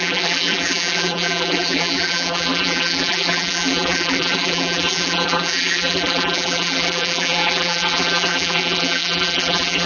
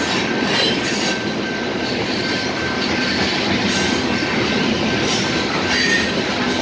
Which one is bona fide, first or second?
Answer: second